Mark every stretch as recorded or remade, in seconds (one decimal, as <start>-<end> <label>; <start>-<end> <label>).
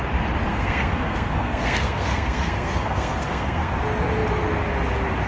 0.0-0.5 recorded; 0.5-3.7 remade; 3.7-5.3 recorded